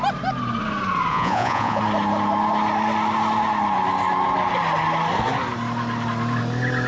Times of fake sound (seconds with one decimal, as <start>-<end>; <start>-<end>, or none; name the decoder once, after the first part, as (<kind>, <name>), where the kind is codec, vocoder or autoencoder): 1.1-1.8 (vocoder, Vocos)

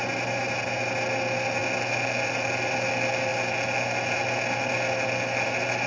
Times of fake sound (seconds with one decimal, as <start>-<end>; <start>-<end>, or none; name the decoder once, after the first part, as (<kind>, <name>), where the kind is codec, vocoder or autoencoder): none

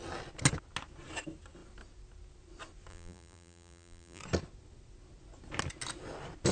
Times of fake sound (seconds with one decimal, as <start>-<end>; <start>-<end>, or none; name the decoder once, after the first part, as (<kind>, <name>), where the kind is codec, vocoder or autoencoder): 2.9-4.2 (vocoder, BigVGAN v2)

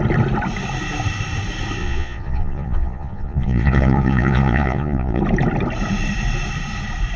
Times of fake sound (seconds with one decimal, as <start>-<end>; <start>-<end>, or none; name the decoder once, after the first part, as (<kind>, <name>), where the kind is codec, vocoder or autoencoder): 1.8-5.2 (vocoder, Vocos)

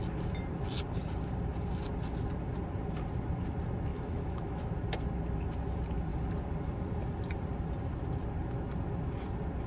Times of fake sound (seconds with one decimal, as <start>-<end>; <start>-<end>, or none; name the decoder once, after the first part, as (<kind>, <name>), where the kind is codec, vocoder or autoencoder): 3.9-4.7 (autoencoder, DAC-VAE)

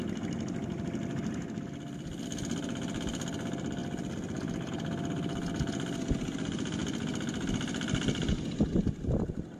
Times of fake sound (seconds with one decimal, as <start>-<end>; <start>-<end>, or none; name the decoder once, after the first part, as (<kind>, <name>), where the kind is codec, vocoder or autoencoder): none